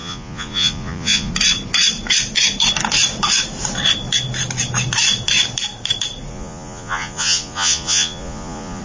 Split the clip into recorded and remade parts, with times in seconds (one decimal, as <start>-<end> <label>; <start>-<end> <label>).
0.0-1.3 remade; 1.3-6.3 recorded; 6.3-8.8 remade